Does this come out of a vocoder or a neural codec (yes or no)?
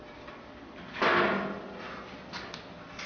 no